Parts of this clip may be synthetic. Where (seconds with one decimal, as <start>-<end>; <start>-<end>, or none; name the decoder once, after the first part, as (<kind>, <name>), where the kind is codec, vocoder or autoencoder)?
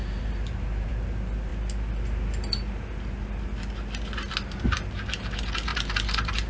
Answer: 0.0-0.9 (vocoder, BigVGAN v2); 5.7-6.5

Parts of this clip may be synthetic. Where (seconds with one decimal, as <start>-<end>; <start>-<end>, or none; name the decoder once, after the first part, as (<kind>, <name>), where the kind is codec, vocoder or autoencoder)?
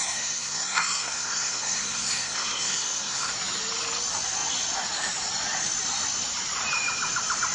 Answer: 0.0-3.3 (codec, SNAC)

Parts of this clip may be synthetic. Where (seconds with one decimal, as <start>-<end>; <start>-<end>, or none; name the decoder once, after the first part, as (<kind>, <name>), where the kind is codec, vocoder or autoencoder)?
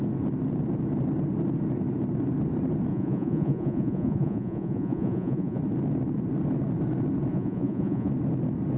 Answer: 2.9-5.6 (vocoder, Vocos); 7.3-8.1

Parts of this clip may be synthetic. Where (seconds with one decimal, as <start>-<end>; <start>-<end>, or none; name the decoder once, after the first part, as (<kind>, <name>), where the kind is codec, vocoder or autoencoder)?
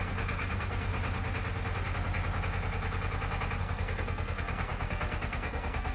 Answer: 0.0-0.9 (codec, SNAC); 3.6-5.9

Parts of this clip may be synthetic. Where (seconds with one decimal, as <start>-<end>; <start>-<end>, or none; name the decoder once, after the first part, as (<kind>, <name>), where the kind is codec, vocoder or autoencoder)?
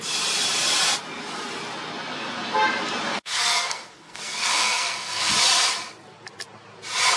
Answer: 3.1-5.3 (codec, SNAC)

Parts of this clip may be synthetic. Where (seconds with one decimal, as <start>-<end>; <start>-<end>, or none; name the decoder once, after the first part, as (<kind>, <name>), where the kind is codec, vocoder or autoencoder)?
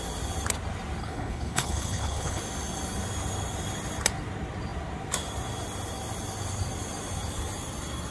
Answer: 1.0-2.4 (codec, HILCodec)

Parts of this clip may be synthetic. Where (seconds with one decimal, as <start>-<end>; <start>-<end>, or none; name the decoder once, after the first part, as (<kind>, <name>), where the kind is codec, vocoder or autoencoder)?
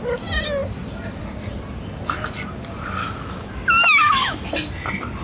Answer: 3.0-4.5 (autoencoder, DAC-VAE)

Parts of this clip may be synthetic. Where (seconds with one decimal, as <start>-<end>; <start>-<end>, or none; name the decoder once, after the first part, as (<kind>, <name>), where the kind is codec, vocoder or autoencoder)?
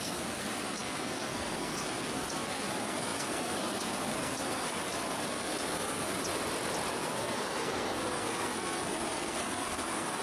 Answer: 0.0-6.1 (codec, SNAC); 6.9-10.2